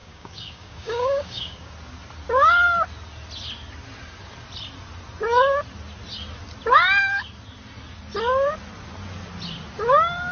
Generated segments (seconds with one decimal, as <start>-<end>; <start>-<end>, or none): 0.0-1.7

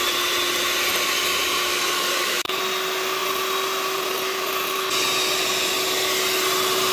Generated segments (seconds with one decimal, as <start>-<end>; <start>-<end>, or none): 1.7-2.6